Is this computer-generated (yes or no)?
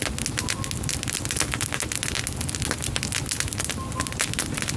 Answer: no